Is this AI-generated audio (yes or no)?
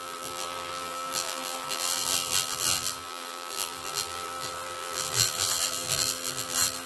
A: yes